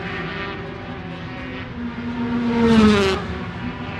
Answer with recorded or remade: recorded